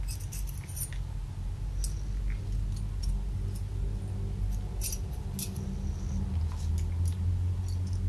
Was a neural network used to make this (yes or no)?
no